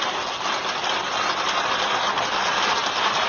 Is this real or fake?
real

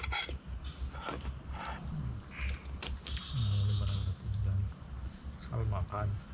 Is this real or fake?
real